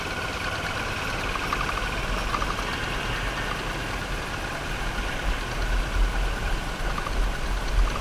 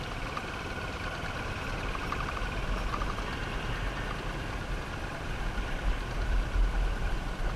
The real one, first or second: first